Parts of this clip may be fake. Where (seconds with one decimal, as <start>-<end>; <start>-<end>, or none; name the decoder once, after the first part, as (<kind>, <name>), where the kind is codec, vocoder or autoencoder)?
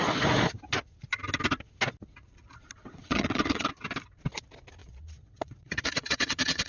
2.8-3.7 (vocoder, WaveNeXt); 4.8-6.7